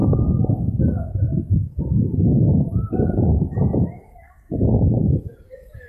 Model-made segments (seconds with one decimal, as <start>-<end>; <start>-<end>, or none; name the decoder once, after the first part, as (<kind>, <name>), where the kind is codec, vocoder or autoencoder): 0.0-5.9 (codec, DAC)